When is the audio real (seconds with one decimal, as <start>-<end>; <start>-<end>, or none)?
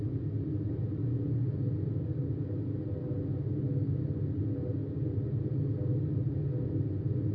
0.0-1.0; 1.9-7.3